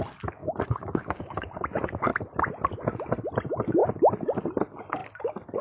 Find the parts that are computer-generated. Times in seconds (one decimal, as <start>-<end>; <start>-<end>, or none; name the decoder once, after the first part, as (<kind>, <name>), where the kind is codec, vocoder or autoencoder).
0.4-1.5 (codec, DAC)